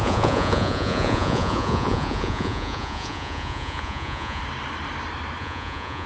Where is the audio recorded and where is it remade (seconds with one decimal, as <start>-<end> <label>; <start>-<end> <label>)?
0.0-4.4 remade; 4.4-5.4 recorded; 5.4-6.1 remade